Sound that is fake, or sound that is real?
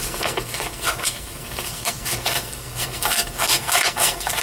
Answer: fake